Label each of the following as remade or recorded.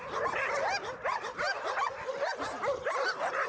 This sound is recorded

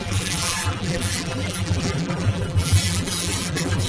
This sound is remade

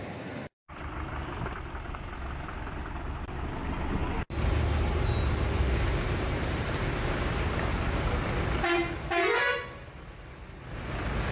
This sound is recorded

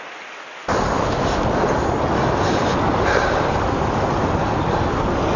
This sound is recorded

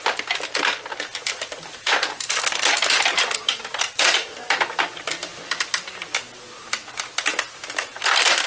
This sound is remade